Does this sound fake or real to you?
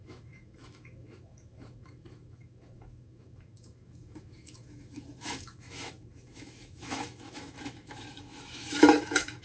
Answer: fake